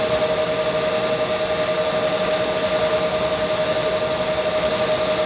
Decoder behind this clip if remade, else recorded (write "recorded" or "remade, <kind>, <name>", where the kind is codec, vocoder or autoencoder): recorded